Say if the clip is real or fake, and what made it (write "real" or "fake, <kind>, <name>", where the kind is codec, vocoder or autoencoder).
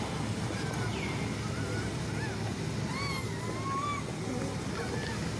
real